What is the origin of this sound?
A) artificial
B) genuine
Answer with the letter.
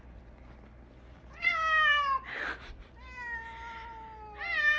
B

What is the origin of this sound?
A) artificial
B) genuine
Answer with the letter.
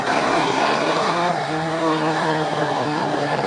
A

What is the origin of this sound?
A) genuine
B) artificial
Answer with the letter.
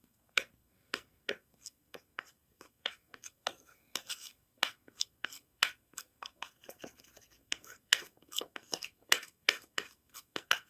B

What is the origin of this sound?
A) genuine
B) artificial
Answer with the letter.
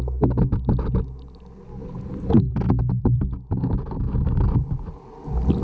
A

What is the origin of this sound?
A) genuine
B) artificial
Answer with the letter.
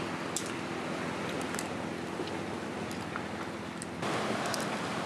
A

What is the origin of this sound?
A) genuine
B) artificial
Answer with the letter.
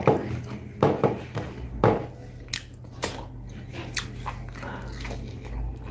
A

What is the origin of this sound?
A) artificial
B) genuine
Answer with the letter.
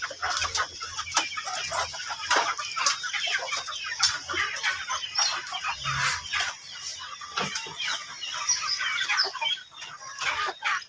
B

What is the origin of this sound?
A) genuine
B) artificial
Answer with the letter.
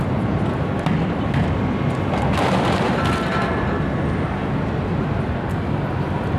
A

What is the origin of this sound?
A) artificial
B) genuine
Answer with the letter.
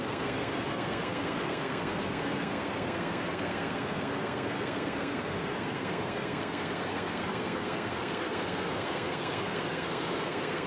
A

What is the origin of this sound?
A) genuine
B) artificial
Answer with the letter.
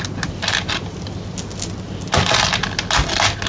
A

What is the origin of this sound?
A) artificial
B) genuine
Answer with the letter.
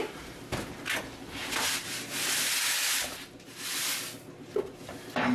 B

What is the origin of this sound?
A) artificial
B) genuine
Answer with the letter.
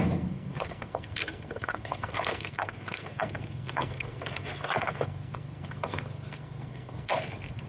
A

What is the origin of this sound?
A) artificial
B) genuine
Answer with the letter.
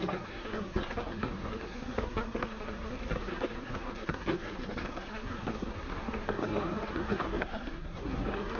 A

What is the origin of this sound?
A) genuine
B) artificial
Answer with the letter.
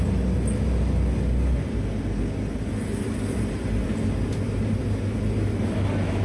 A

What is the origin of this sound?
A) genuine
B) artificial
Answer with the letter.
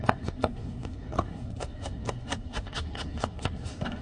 B